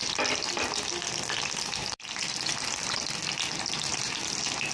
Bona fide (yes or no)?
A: yes